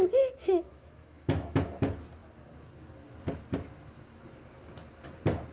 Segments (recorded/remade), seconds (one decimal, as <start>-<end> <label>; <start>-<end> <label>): 0.0-0.4 recorded; 0.4-1.6 remade; 1.6-5.5 recorded